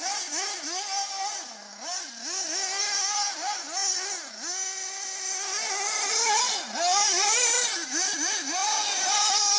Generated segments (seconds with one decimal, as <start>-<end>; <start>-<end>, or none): none